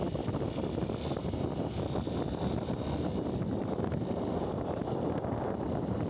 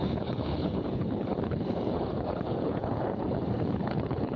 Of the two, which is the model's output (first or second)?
second